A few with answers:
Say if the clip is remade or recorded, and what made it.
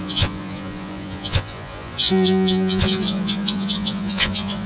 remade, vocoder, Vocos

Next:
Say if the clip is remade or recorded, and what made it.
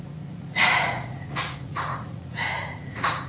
remade, vocoder, Vocos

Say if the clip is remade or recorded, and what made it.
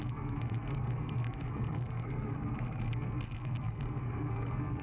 remade, codec, SNAC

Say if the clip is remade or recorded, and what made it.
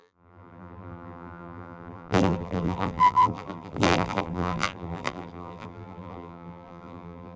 remade, vocoder, BigVGAN v2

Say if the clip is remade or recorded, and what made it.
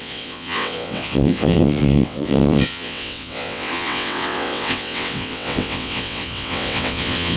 remade, vocoder, WaveNeXt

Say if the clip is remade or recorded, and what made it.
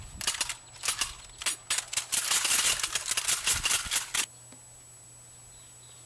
recorded